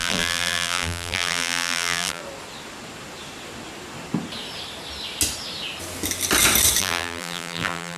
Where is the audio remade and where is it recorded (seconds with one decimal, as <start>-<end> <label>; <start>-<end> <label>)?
0.0-2.2 remade; 2.2-6.8 recorded; 6.8-8.0 remade